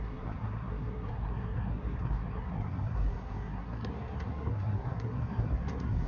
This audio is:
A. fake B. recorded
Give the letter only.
A